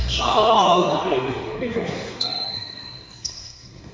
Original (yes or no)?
no